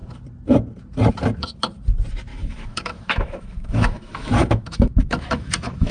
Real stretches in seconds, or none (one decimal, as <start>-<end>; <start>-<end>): 0.0-2.3